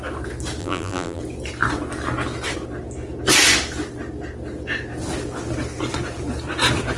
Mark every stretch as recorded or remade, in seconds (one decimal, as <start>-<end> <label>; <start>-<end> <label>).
0.0-0.6 recorded; 0.6-1.2 remade; 1.2-7.0 recorded